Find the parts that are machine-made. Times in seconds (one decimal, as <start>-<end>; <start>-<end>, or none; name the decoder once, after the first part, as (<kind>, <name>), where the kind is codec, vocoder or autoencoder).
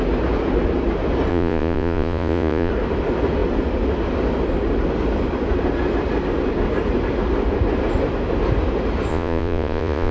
1.3-2.7 (vocoder, Vocos); 9.1-10.1